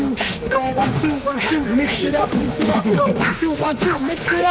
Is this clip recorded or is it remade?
remade